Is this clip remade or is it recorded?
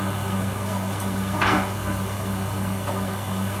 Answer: remade